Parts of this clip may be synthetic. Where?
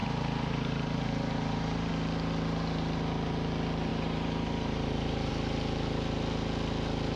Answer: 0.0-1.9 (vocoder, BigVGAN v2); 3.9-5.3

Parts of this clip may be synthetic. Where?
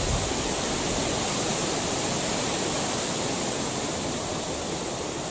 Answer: 0.0-5.3 (vocoder, BigVGAN v2)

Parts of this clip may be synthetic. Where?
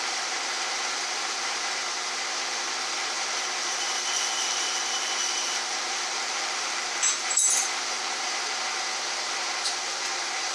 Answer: 0.0-10.5 (vocoder, BigVGAN v2)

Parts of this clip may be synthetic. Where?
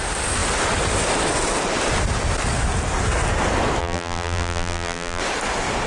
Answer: 3.8-5.2 (vocoder, BigVGAN v2)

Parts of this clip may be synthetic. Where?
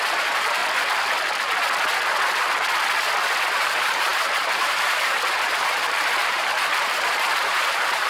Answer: 0.0-0.6 (vocoder, BigVGAN v2); 3.4-8.1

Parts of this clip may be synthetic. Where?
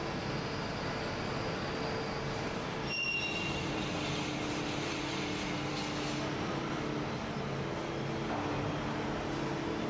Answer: none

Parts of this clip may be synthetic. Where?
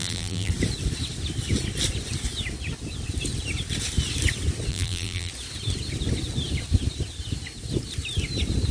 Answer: 0.0-0.5 (vocoder, BigVGAN v2); 4.7-5.3